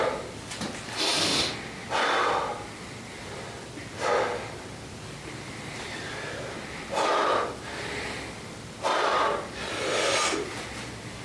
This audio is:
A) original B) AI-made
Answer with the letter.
B